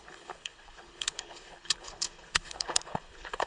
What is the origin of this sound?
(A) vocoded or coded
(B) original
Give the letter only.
A